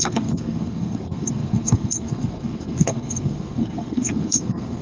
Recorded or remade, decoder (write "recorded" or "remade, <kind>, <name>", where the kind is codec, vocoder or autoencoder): remade, codec, SNAC